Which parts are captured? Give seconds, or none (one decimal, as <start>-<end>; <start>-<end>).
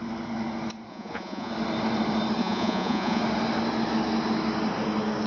0.0-0.9; 1.5-2.4; 3.2-5.3